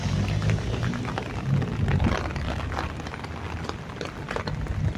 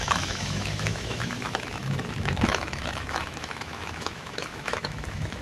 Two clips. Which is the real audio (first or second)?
first